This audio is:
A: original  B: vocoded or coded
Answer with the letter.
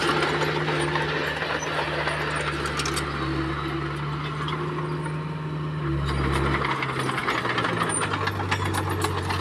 A